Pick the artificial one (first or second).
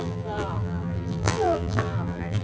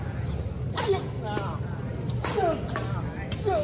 first